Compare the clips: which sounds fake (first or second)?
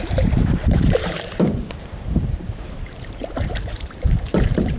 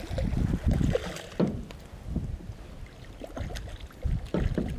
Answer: first